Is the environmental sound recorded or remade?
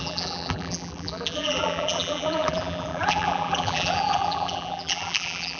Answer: remade